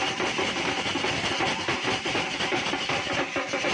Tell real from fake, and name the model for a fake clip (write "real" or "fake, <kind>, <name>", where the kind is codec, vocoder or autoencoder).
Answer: real